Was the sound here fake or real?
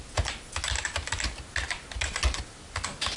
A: real